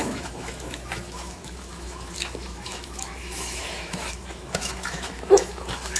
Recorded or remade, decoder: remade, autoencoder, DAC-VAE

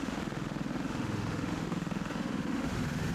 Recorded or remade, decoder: remade, autoencoder, DAC-VAE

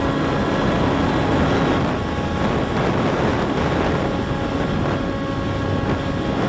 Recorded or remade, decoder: recorded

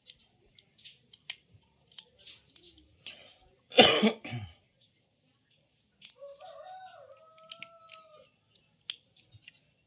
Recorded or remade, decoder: recorded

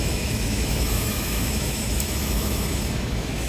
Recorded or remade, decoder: remade, autoencoder, DAC-VAE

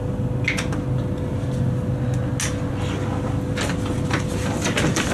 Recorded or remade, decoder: recorded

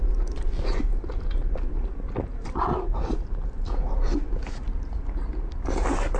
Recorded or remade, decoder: recorded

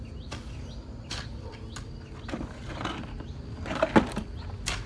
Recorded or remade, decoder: recorded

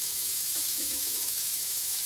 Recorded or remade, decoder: remade, autoencoder, DAC-VAE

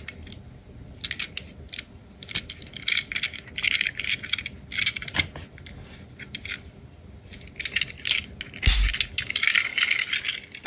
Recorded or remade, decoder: recorded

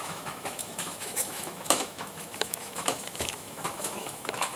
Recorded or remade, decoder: remade, autoencoder, DAC-VAE